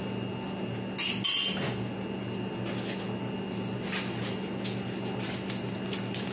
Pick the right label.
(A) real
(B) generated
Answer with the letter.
A